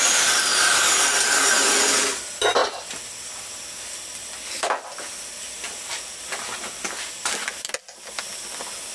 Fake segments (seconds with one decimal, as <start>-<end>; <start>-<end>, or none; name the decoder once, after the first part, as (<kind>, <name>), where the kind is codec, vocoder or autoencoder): none